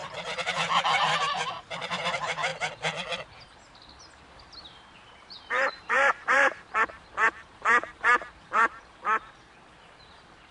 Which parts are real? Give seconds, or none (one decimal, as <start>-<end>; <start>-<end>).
2.5-4.4